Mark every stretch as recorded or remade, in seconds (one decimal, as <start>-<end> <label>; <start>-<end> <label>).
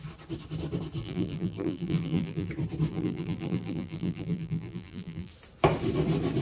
0.0-1.0 recorded; 1.0-2.5 remade; 2.5-2.9 recorded; 2.9-5.3 remade; 5.3-6.4 recorded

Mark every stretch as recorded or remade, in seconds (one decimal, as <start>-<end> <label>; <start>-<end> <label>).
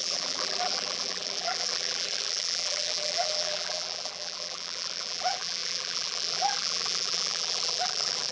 0.0-8.3 remade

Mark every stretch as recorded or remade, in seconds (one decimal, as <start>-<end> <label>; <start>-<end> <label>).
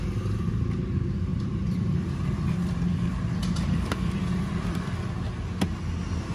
0.0-1.3 recorded; 1.3-5.1 remade; 5.1-6.3 recorded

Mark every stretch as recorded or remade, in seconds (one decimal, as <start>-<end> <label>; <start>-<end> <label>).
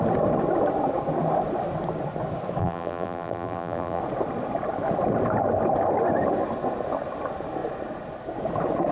0.0-2.6 recorded; 2.6-4.0 remade; 4.0-8.9 recorded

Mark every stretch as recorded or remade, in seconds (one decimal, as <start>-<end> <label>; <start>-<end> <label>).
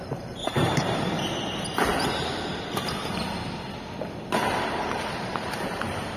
0.0-1.9 remade; 1.9-4.5 recorded; 4.5-6.2 remade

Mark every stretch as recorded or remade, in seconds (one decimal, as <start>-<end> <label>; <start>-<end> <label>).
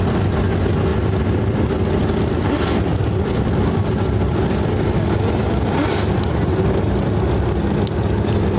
0.0-0.9 recorded; 0.9-4.5 remade; 4.5-8.6 recorded